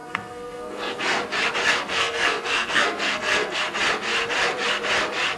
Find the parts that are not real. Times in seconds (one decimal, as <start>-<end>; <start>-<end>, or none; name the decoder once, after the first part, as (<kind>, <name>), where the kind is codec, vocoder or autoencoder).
0.0-1.2 (codec, SNAC); 1.6-3.6